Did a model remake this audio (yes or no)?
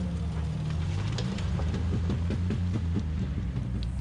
no